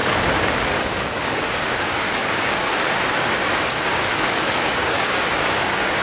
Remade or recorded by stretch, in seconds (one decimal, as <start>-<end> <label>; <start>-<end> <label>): 0.0-6.0 remade